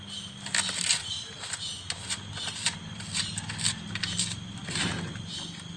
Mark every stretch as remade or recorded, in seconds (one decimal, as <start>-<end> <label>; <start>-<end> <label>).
0.0-5.8 recorded

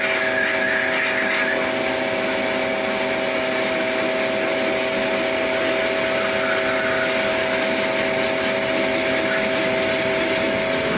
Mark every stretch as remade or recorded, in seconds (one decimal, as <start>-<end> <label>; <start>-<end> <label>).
0.0-11.0 recorded

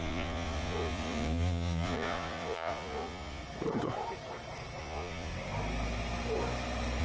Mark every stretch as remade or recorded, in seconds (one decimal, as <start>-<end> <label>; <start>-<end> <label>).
0.0-3.4 remade; 3.4-4.8 recorded; 4.8-5.3 remade; 5.3-7.0 recorded

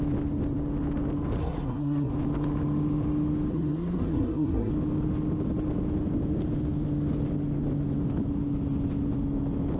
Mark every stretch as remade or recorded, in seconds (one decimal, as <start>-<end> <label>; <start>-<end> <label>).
0.0-1.4 recorded; 1.4-2.1 remade; 2.1-3.5 recorded; 3.5-4.7 remade; 4.7-9.8 recorded

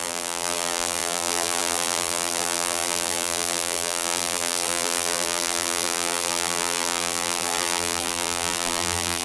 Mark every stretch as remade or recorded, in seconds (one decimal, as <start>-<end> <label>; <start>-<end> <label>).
0.0-9.2 remade

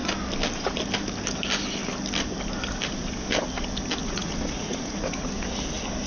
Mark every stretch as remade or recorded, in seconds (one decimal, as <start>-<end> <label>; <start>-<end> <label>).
0.0-4.0 recorded; 4.0-5.3 remade; 5.3-6.1 recorded